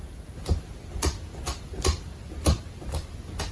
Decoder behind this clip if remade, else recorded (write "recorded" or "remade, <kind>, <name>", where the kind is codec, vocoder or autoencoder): recorded